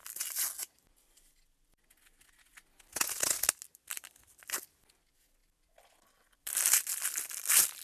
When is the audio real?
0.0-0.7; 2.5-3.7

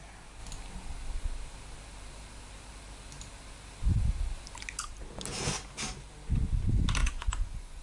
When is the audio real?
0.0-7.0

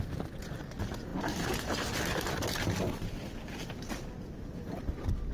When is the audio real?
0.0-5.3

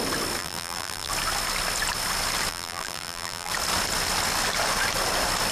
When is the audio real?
0.0-0.4; 1.1-2.5; 3.5-5.5

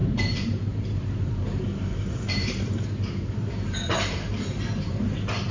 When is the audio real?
none